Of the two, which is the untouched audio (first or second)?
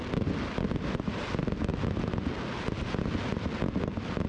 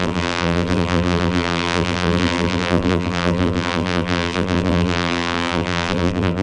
first